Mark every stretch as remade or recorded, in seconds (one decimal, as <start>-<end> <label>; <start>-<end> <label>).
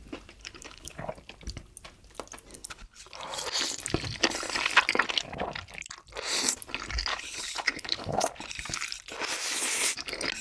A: 0.0-0.4 recorded; 0.4-1.1 remade; 1.1-2.5 recorded; 2.5-3.0 remade; 3.0-7.1 recorded; 7.1-8.3 remade; 8.3-10.4 recorded